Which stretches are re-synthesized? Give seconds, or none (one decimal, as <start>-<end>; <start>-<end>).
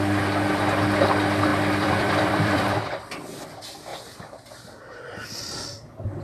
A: 1.5-2.9; 3.9-5.4